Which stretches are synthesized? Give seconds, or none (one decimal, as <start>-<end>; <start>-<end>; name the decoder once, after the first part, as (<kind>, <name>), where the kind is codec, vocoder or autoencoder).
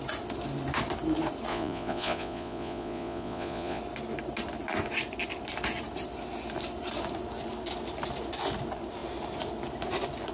1.5-3.8 (vocoder, Vocos)